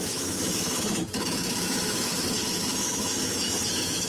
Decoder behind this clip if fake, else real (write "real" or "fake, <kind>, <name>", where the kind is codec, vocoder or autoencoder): fake, autoencoder, DAC-VAE